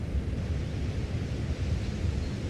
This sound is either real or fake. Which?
real